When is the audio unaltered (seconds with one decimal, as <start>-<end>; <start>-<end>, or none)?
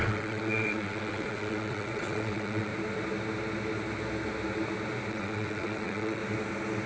2.7-5.1; 6.2-6.9